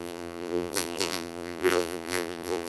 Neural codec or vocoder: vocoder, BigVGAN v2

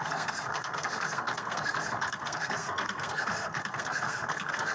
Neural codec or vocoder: codec, SNAC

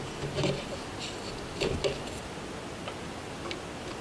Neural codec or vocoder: none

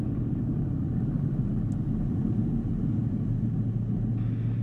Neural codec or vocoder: none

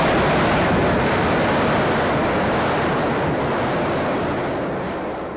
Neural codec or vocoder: none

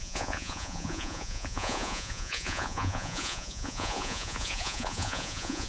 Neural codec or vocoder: vocoder, Vocos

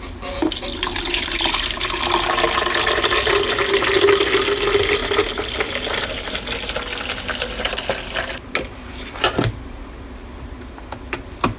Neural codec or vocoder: none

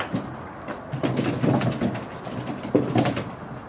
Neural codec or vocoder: none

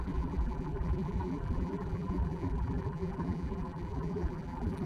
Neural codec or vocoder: vocoder, BigVGAN v2